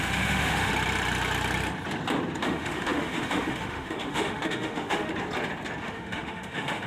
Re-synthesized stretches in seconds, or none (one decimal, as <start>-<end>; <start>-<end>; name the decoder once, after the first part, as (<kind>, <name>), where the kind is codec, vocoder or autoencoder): 0.0-0.7 (autoencoder, DAC-VAE); 2.4-5.1; 5.8-6.9